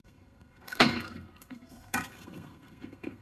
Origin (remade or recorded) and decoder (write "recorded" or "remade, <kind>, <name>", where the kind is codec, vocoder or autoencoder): remade, codec, SNAC